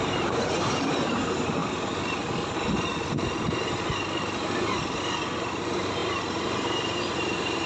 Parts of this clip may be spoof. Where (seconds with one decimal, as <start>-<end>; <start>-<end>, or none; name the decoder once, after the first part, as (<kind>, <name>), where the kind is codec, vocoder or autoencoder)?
0.0-1.6 (vocoder, BigVGAN v2); 5.5-7.7